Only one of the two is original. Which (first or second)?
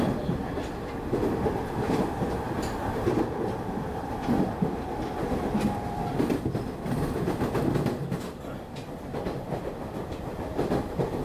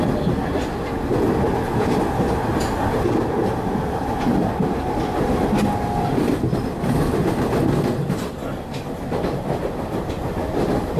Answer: second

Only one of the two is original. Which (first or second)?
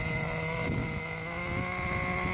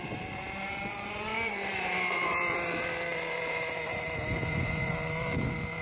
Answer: first